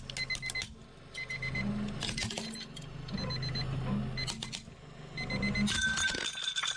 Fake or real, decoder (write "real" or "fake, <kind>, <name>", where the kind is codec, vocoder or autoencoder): real